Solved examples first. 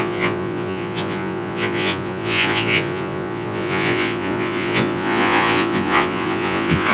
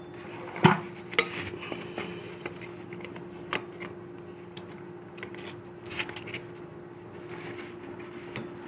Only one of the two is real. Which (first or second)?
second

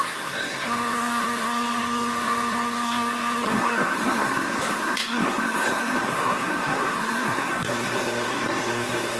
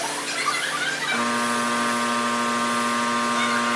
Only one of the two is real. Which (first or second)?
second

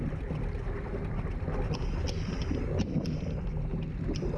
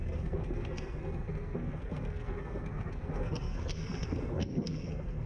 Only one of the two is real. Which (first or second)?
first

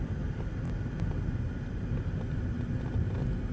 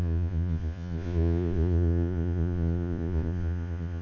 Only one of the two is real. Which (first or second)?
first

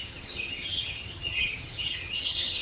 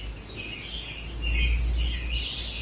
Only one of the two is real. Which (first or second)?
second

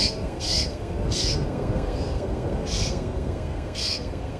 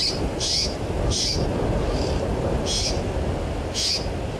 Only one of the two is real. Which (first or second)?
second